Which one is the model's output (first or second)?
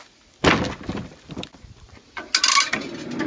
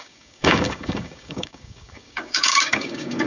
second